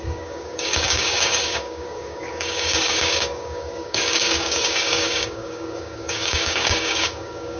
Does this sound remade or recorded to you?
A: remade